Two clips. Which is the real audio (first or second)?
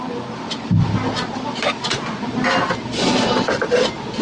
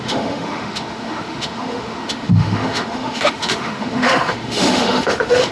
first